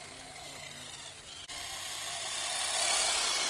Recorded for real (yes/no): yes